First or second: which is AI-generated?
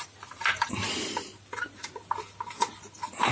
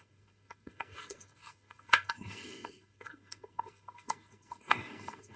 second